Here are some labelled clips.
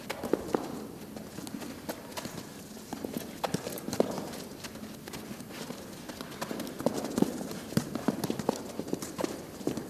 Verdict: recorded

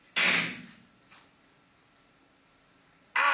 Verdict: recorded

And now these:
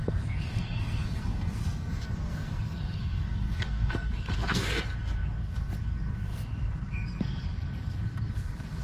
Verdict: remade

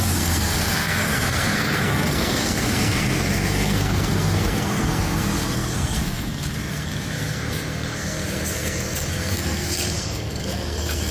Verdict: remade